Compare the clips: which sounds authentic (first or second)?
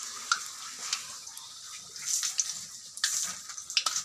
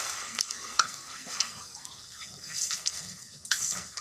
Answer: first